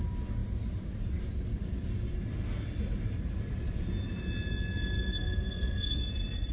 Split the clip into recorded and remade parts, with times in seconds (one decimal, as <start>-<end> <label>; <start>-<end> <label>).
0.0-5.1 recorded; 5.1-6.0 remade; 6.0-6.5 recorded